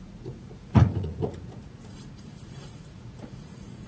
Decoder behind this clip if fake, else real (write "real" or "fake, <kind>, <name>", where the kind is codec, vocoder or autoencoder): fake, vocoder, Vocos